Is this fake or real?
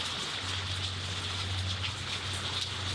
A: real